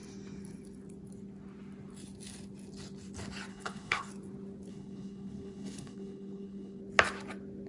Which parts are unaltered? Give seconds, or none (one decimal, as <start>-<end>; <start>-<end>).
0.0-3.5; 4.1-4.7; 6.8-7.7